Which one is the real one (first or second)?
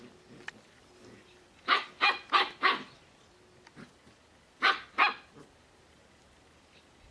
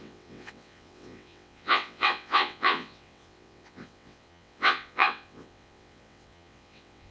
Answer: first